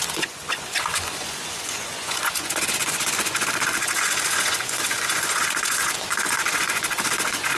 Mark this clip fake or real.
fake